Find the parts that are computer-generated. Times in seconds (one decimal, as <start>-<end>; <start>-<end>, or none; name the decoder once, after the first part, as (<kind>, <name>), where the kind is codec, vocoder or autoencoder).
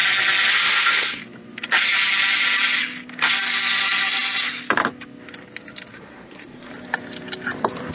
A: 0.5-1.2 (codec, SNAC); 5.9-6.7